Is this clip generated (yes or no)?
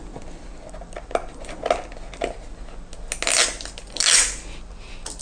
no